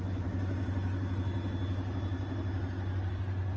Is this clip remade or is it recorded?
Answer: recorded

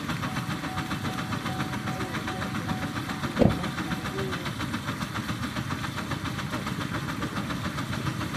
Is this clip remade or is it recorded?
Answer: recorded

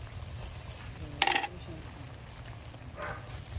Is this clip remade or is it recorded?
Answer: recorded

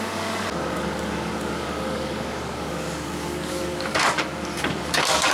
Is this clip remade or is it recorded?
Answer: remade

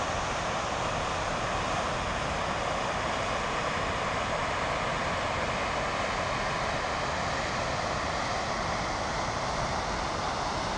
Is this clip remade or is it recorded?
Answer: recorded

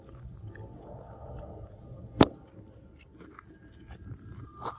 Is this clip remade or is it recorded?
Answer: recorded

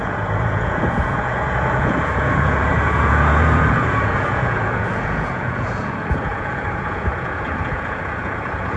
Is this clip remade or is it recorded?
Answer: remade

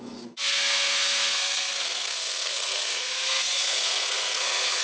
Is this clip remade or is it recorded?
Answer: remade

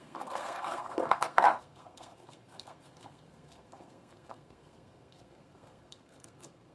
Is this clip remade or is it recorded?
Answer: remade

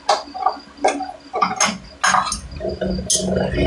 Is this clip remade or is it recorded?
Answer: recorded